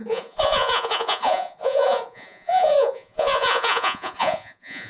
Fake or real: fake